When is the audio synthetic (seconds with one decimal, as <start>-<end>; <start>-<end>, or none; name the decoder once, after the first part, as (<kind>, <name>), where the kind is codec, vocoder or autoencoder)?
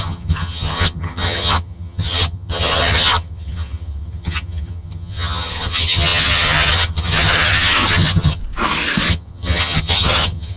0.0-8.4 (vocoder, HiFi-GAN); 9.1-10.6